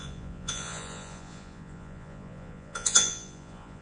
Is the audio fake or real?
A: fake